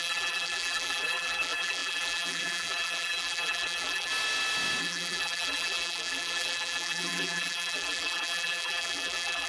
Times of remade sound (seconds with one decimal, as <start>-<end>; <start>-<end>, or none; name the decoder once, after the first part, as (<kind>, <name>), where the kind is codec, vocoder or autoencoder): 0.0-4.1 (vocoder, BigVGAN v2); 4.8-9.5